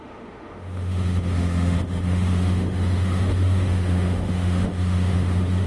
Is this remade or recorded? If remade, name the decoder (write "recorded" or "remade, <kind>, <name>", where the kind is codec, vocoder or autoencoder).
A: remade, autoencoder, DAC-VAE